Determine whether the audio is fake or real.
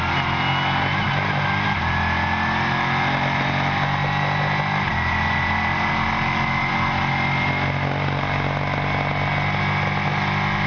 real